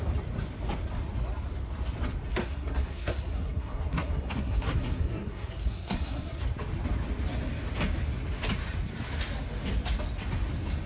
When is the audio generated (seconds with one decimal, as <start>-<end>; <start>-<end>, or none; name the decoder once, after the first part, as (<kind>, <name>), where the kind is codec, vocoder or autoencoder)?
2.3-6.4 (codec, SNAC)